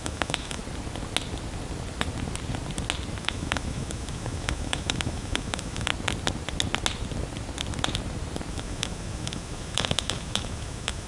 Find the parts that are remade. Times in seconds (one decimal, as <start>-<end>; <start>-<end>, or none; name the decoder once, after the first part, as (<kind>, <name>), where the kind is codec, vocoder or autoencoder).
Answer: 0.0-0.6 (autoencoder, DAC-VAE); 3.2-5.9; 8.5-11.1